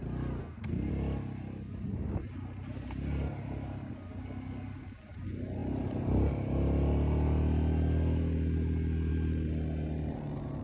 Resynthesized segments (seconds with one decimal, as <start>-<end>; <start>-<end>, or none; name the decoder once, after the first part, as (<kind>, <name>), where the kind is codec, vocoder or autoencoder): 0.4-0.9 (codec, SNAC)